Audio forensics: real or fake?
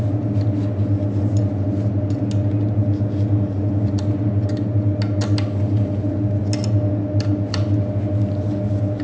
real